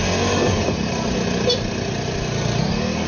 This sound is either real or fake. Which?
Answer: real